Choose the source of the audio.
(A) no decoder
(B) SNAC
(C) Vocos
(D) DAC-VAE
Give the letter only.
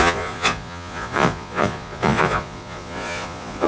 C